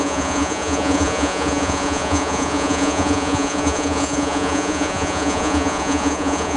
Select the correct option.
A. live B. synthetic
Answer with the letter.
B